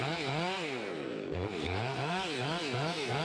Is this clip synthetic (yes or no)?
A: yes